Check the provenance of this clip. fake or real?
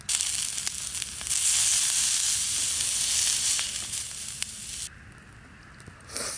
real